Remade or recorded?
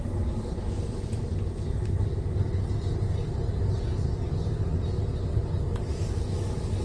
recorded